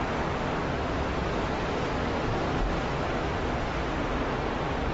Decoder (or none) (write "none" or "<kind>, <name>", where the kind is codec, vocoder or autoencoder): none